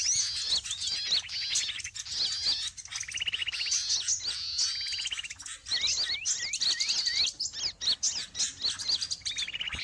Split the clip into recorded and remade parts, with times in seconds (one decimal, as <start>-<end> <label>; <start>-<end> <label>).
0.0-9.8 recorded